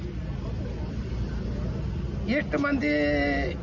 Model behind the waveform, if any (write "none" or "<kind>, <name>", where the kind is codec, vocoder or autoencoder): none